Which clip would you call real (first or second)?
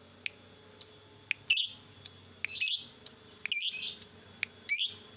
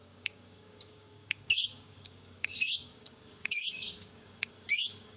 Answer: first